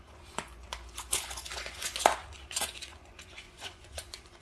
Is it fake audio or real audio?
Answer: fake